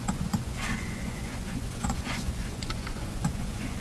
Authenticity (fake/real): fake